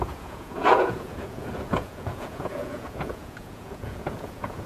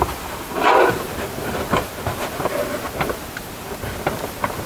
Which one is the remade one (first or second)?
first